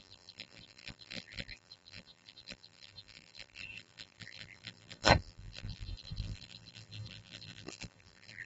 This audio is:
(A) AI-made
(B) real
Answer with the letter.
A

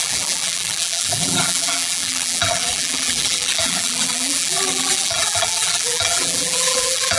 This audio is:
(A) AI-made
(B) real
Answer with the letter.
A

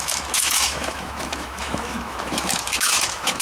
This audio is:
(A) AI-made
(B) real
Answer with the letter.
A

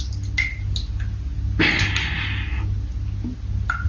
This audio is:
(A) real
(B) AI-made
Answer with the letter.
A